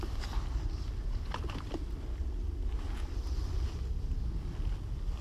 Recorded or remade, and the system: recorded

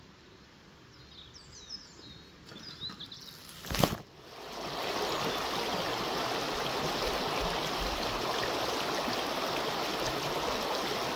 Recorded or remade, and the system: recorded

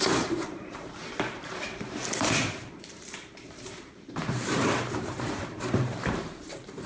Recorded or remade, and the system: remade, vocoder, BigVGAN v2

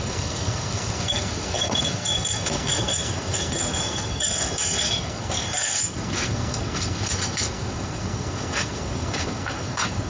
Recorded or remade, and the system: remade, codec, SNAC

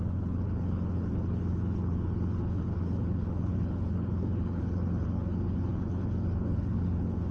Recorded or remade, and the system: remade, codec, HILCodec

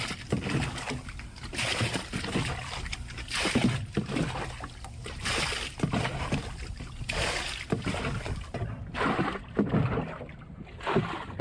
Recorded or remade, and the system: recorded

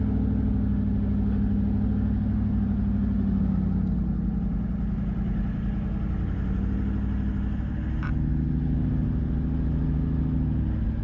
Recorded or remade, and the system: recorded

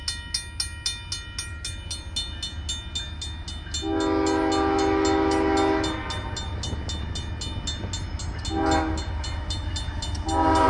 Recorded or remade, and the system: recorded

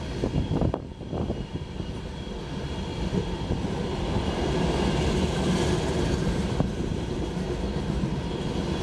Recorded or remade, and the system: recorded